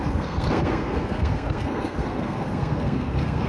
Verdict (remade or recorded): remade